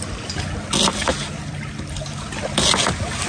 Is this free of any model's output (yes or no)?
yes